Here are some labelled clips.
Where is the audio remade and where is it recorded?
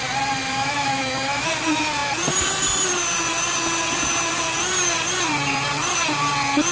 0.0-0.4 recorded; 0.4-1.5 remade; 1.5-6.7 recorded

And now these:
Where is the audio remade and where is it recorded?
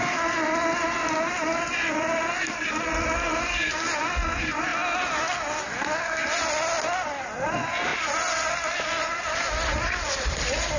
0.0-7.9 recorded; 7.9-9.2 remade; 9.2-10.8 recorded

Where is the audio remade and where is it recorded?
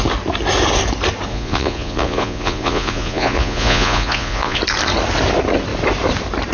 0.0-1.3 recorded; 1.3-4.6 remade; 4.6-6.5 recorded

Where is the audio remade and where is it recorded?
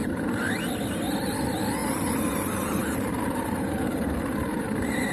0.0-0.6 remade; 0.6-1.8 recorded; 1.8-5.1 remade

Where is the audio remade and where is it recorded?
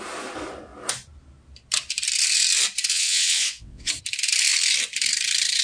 0.0-2.9 recorded; 2.9-3.9 remade; 3.9-5.6 recorded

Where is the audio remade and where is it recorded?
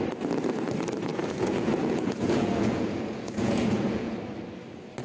0.0-1.1 recorded; 1.1-4.1 remade; 4.1-5.0 recorded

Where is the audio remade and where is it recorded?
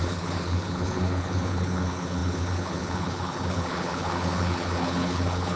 0.0-5.6 remade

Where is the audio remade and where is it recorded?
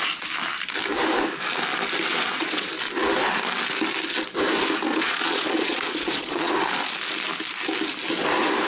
0.0-2.1 recorded; 2.1-2.7 remade; 2.7-4.9 recorded; 4.9-6.5 remade; 6.5-8.7 recorded